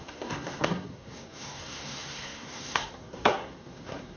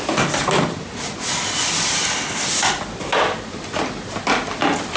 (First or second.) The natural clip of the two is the second